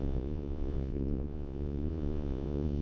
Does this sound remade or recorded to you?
remade